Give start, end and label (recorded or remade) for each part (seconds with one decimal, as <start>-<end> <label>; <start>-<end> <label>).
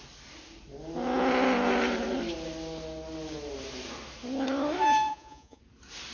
0.0-5.1 recorded; 5.1-5.6 remade; 5.6-6.1 recorded